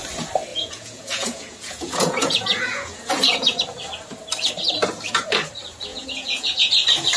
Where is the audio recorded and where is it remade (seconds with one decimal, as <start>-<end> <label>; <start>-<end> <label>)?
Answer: 0.0-0.5 recorded; 0.5-3.6 remade; 3.6-5.9 recorded; 5.9-6.7 remade; 6.7-7.2 recorded